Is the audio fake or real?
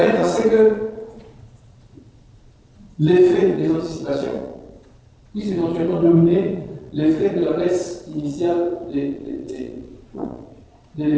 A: fake